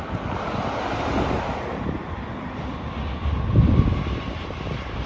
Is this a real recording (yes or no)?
yes